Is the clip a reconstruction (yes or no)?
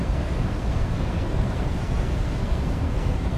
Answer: yes